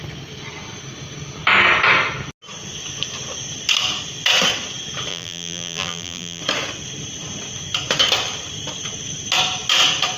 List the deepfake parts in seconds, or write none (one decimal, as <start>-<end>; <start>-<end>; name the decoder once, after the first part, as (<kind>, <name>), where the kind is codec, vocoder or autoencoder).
5.1-6.4 (vocoder, BigVGAN v2)